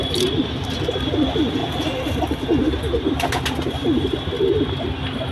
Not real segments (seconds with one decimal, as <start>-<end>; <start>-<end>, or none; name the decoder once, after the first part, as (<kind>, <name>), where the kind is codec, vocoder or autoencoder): none